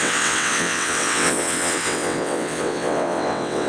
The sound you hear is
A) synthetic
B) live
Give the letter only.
A